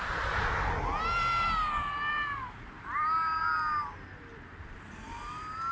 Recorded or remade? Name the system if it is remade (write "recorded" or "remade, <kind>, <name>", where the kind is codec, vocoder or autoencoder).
recorded